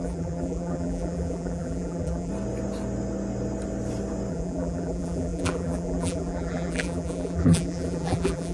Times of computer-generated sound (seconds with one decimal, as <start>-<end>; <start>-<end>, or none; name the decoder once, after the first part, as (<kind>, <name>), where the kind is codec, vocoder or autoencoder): 0.0-2.3 (vocoder, BigVGAN v2); 4.3-8.5